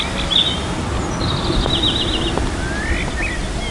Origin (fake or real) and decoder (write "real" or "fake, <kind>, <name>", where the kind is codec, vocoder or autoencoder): real